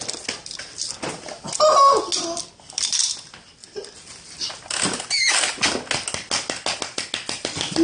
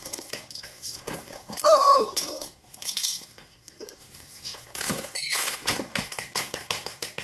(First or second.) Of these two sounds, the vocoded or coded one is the second